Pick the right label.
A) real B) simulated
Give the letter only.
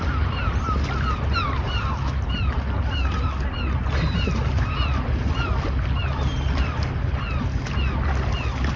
A